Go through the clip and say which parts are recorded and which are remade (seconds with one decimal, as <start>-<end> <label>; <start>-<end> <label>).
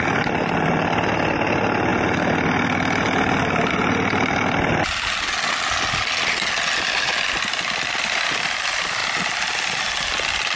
0.0-10.6 recorded